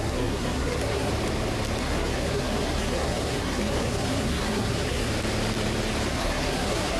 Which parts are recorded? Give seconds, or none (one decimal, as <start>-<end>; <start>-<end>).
1.1-1.8; 5.1-6.1